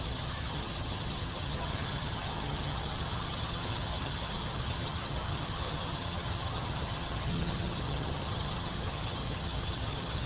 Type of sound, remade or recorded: remade